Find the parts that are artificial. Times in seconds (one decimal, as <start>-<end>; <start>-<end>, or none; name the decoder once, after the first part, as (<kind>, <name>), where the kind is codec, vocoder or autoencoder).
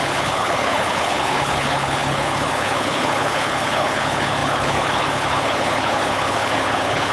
0.0-7.1 (codec, HILCodec)